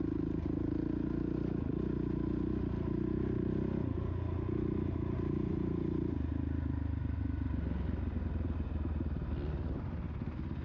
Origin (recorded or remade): recorded